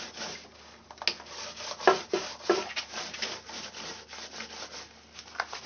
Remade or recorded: recorded